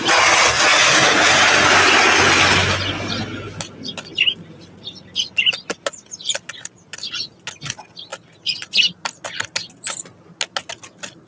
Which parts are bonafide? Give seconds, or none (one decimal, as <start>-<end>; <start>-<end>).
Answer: 0.0-11.3